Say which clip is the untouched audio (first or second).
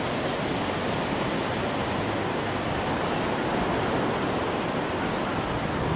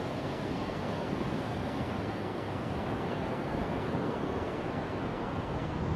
first